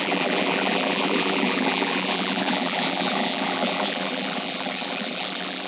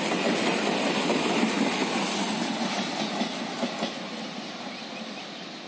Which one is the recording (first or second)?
second